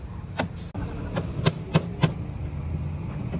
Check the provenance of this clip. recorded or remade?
recorded